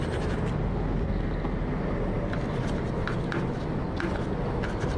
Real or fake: real